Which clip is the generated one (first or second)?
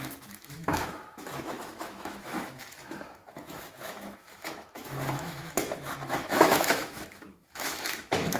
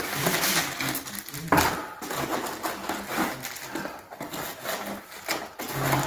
first